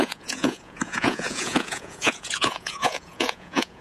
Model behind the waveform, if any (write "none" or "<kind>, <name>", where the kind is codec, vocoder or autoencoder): vocoder, Vocos